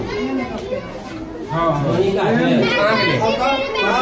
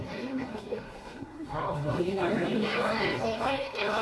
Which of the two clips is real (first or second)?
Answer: first